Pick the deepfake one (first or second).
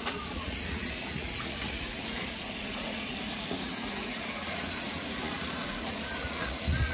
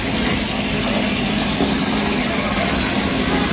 first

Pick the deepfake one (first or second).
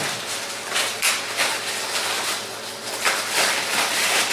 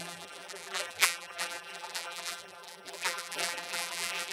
second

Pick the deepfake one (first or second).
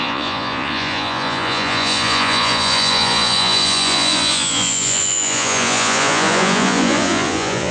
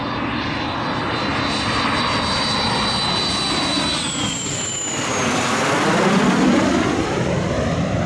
first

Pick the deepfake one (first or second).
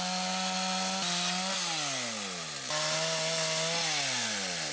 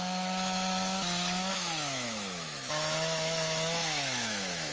second